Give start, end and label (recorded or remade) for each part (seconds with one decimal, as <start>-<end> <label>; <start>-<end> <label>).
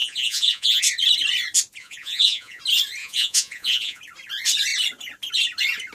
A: 0.0-0.8 remade; 0.8-1.8 recorded; 1.8-2.6 remade; 2.6-3.0 recorded; 3.0-4.0 remade; 4.0-5.9 recorded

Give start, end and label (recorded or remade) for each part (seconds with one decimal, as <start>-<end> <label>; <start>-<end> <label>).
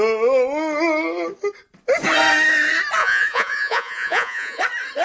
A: 0.0-3.0 recorded; 3.0-4.6 remade; 4.6-5.0 recorded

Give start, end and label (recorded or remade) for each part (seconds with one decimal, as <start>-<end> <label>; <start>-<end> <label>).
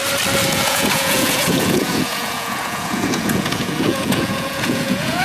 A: 0.0-0.5 recorded; 0.5-5.2 remade